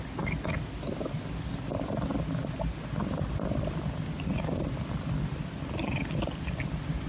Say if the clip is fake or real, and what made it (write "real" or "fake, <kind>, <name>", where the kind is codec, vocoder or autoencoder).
real